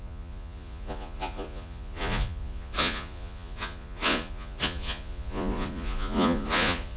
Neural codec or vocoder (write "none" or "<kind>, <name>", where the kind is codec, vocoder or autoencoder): vocoder, Vocos